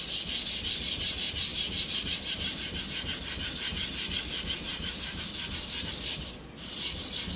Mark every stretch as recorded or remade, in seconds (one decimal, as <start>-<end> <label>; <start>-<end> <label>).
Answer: 0.0-1.5 recorded; 1.5-2.8 remade; 2.8-4.7 recorded; 4.7-5.9 remade; 5.9-7.4 recorded